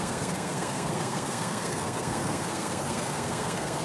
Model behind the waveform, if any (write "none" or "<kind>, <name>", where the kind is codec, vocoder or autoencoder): codec, SNAC